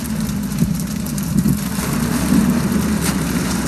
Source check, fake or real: real